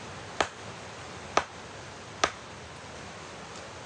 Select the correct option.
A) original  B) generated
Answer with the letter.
A